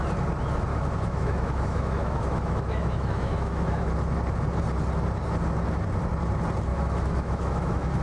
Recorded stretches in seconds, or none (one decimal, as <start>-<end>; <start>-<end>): 0.0-0.7; 3.9-6.7